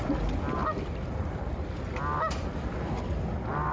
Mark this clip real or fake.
real